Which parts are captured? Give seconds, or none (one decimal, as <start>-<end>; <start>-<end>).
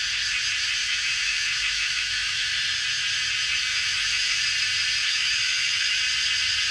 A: 0.0-0.8; 2.5-3.7; 4.4-5.0; 6.0-6.7